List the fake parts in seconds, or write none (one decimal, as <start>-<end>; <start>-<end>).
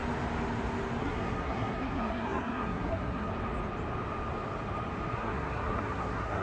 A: 1.0-3.3; 5.1-6.4